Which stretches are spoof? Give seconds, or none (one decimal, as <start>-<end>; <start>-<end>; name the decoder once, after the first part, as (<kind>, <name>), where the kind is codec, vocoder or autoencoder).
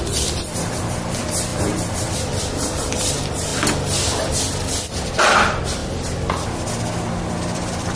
0.0-3.5 (vocoder, BigVGAN v2); 4.4-5.8; 7.3-8.0